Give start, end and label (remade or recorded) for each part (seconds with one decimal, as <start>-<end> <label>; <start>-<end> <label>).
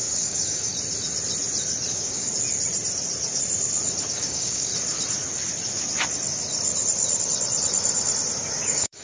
0.0-0.7 remade; 0.7-1.9 recorded; 1.9-2.3 remade; 2.3-4.1 recorded; 4.1-4.7 remade; 4.7-8.6 recorded; 8.6-9.0 remade